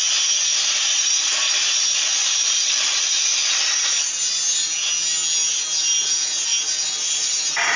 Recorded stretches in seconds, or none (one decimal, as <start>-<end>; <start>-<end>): 0.0-0.5; 3.4-7.8